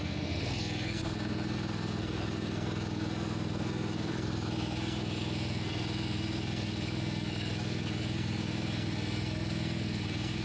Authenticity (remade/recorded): remade